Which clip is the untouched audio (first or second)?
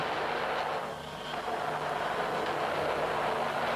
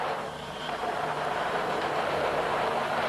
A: first